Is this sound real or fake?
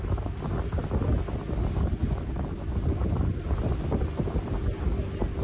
real